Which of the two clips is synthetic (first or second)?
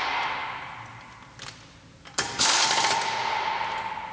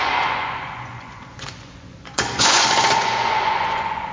second